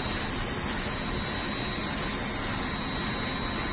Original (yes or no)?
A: yes